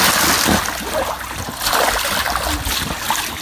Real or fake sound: real